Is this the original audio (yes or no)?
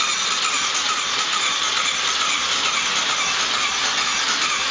yes